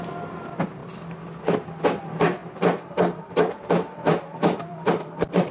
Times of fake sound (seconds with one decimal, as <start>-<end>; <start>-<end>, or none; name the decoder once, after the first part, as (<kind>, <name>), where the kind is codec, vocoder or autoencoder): 0.0-0.8 (vocoder, BigVGAN v2); 2.0-5.5